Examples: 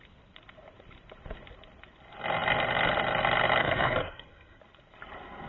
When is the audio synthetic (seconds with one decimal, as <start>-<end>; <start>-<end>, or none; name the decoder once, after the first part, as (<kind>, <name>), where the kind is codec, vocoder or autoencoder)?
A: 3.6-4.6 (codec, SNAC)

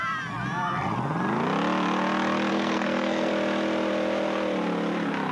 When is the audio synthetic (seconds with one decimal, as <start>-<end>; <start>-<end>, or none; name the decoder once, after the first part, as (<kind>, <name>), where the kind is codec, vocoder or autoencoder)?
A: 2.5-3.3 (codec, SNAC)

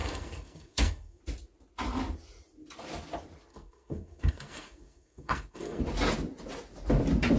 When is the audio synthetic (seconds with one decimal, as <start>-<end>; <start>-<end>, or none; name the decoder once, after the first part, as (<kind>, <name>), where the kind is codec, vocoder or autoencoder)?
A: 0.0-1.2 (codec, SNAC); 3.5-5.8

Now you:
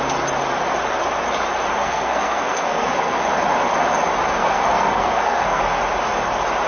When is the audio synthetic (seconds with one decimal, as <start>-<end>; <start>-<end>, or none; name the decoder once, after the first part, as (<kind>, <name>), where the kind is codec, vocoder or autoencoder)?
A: 1.8-3.3 (codec, SNAC); 4.4-5.6

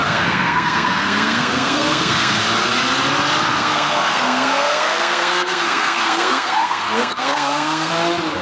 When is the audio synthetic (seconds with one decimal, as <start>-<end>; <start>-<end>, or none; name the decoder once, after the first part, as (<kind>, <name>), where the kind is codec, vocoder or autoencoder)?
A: 0.0-2.4 (codec, SNAC); 3.5-7.9